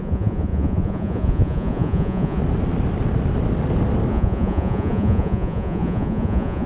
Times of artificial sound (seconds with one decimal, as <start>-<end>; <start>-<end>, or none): 0.0-2.4; 4.1-6.7